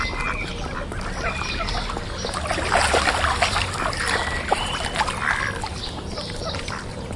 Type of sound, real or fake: real